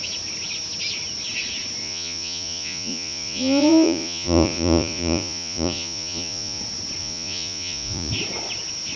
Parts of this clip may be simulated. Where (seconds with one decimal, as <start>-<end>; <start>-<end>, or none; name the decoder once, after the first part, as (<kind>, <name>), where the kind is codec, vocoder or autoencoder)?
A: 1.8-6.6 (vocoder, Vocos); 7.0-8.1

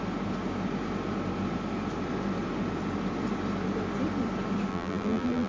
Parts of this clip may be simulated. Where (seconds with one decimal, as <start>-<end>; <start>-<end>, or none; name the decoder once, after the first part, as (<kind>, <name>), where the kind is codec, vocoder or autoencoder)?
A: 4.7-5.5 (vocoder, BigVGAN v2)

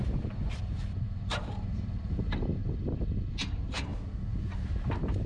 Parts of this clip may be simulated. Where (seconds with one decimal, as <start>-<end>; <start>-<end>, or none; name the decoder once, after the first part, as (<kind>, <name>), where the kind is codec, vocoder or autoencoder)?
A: 0.0-2.6 (vocoder, BigVGAN v2); 3.3-3.9